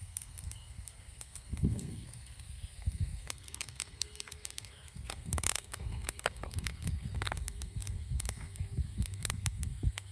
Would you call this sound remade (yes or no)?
yes